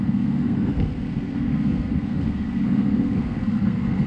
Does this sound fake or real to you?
fake